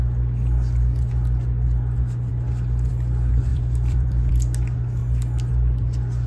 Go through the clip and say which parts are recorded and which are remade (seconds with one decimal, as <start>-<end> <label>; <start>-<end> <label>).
0.0-3.5 recorded; 3.5-4.3 remade; 4.3-6.3 recorded